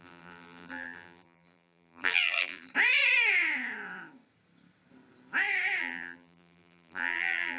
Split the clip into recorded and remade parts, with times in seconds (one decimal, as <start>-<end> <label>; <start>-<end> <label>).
0.0-2.7 remade; 2.7-5.8 recorded; 5.8-7.6 remade